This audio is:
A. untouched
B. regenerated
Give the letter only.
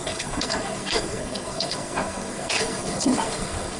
B